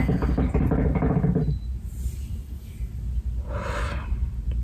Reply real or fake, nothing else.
real